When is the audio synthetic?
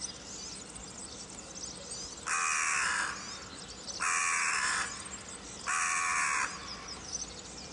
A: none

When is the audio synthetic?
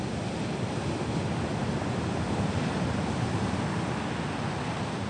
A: none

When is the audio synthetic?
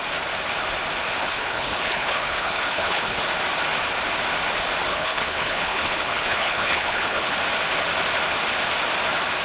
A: 1.2-3.2; 4.9-7.3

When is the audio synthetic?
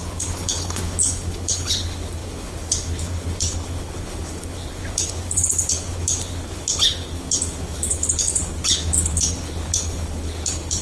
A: 0.0-10.8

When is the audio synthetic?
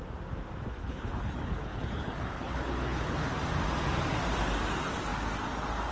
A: 0.8-3.3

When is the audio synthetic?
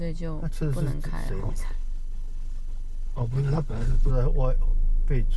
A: 1.4-4.1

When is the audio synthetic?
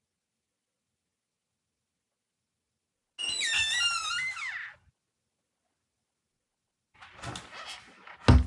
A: none